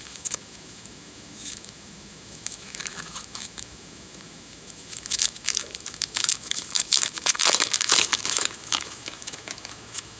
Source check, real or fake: fake